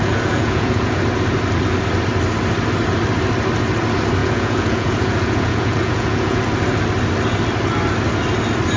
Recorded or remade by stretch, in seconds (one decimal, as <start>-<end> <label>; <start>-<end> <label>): 0.0-1.0 remade; 1.0-4.2 recorded; 4.2-6.4 remade; 6.4-8.8 recorded